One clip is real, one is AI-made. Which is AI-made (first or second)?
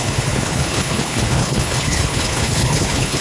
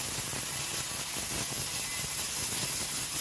first